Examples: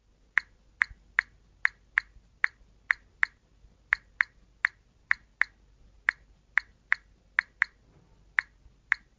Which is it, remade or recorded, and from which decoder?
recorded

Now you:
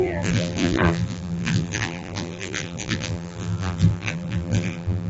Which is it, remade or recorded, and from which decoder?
remade, vocoder, BigVGAN v2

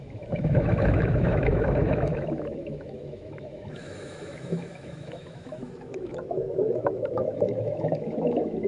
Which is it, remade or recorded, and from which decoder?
remade, autoencoder, DAC-VAE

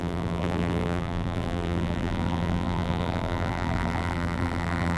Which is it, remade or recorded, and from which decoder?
remade, vocoder, BigVGAN v2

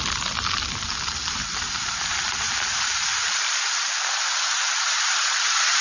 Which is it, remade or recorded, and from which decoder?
recorded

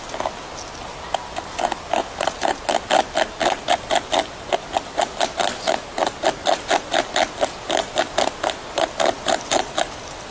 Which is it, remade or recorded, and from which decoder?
recorded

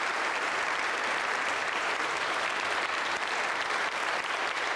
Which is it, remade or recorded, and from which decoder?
remade, vocoder, BigVGAN v2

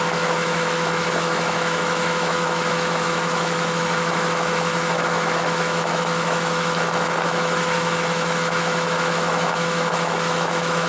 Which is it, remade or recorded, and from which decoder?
remade, autoencoder, DAC-VAE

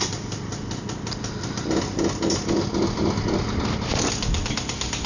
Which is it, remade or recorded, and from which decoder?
recorded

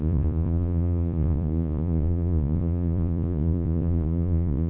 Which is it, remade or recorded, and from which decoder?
remade, vocoder, Vocos